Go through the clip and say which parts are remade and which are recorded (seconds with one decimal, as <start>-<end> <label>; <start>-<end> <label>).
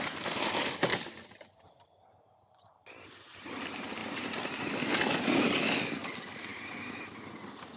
0.0-0.9 recorded; 0.9-1.6 remade; 1.6-4.0 recorded; 4.0-4.6 remade; 4.6-7.8 recorded